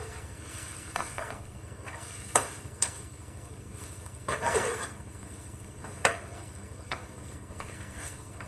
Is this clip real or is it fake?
fake